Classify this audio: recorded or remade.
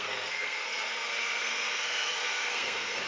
remade